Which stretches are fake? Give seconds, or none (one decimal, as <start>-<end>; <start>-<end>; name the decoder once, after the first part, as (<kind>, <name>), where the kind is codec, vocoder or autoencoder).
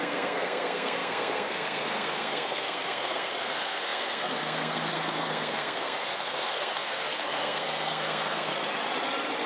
0.0-8.5 (codec, SNAC)